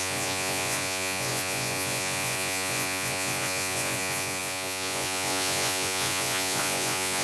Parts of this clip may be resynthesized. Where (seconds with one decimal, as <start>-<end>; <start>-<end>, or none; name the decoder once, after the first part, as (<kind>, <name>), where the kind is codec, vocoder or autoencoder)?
0.0-7.2 (vocoder, Vocos)

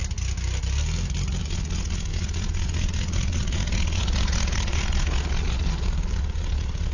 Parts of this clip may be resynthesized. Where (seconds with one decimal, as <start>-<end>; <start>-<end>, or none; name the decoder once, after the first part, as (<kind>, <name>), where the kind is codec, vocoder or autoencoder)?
1.4-6.9 (vocoder, Vocos)